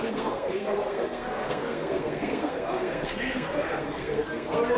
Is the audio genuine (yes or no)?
no